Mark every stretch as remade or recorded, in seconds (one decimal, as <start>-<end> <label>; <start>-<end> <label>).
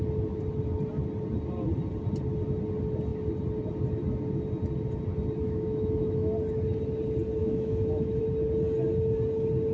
0.0-5.4 recorded; 5.4-6.3 remade; 6.3-7.4 recorded; 7.4-8.2 remade; 8.2-9.7 recorded